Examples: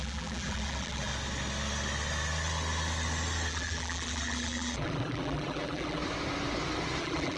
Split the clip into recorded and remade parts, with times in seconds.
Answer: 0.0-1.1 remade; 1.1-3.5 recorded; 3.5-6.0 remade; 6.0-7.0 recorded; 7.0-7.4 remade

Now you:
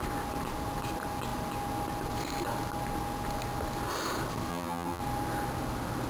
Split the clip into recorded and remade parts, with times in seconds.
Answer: 0.0-4.5 recorded; 4.5-5.0 remade; 5.0-6.1 recorded

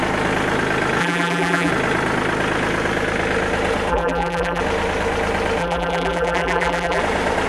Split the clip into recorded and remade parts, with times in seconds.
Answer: 0.0-1.0 recorded; 1.0-1.7 remade; 1.7-3.9 recorded; 3.9-4.6 remade; 4.6-5.6 recorded; 5.6-7.0 remade; 7.0-7.5 recorded

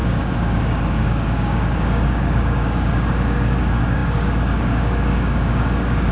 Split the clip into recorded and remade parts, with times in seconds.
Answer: 0.0-6.1 remade

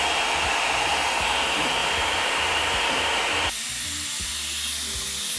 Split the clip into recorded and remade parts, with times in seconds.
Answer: 0.0-1.8 recorded; 1.8-3.1 remade; 3.1-5.4 recorded

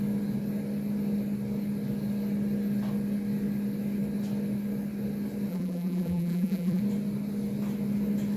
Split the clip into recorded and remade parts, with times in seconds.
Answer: 0.0-5.5 recorded; 5.5-6.8 remade; 6.8-8.4 recorded

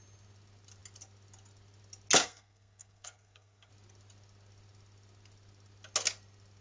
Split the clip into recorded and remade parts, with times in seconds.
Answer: 0.0-2.2 recorded; 2.2-3.7 remade; 3.7-6.6 recorded